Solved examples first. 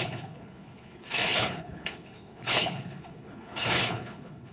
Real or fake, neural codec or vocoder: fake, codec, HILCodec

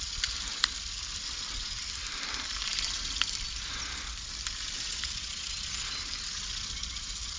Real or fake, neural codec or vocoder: real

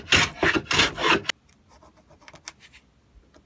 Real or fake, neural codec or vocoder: real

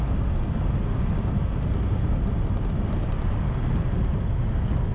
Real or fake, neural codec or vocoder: real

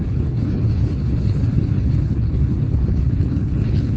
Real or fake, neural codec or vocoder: fake, codec, HILCodec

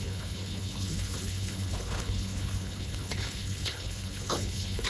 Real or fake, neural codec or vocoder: fake, codec, HILCodec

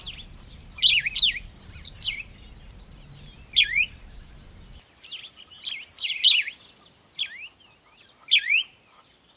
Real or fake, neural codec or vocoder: real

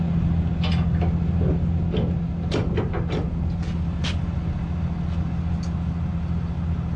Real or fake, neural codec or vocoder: real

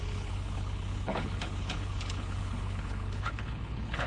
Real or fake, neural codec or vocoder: fake, codec, HILCodec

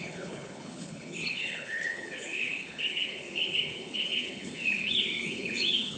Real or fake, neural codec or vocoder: fake, codec, HILCodec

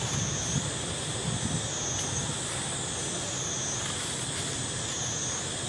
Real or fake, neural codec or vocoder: real